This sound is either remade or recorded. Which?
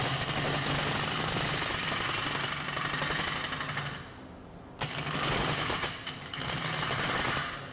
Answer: recorded